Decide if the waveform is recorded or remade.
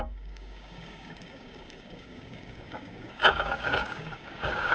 remade